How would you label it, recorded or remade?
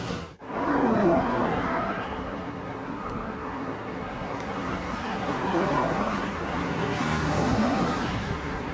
remade